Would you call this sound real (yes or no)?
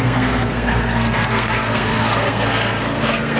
no